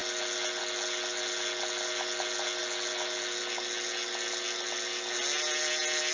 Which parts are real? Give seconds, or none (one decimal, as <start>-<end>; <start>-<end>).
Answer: 0.0-6.1